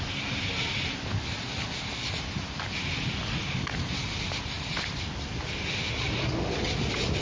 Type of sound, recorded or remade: recorded